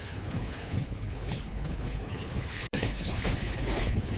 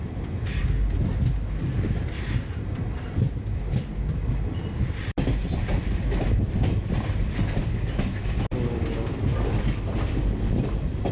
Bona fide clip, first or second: second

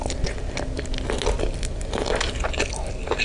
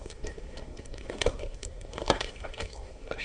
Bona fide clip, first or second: first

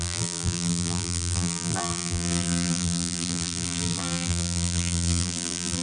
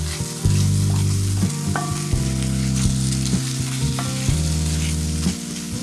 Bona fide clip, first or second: second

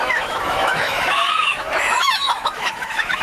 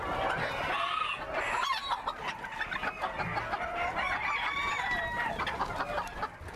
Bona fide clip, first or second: second